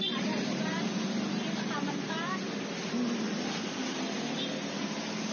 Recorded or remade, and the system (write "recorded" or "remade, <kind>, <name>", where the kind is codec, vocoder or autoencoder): recorded